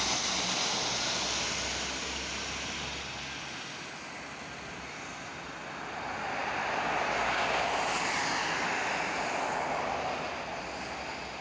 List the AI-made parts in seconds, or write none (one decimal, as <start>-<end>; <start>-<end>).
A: none